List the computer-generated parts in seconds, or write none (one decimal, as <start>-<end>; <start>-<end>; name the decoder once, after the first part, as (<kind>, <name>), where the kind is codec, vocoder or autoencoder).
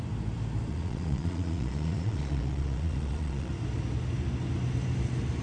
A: 0.7-3.5 (vocoder, Vocos)